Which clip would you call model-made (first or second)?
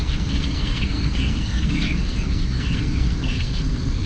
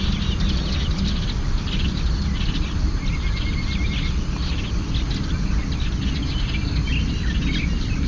first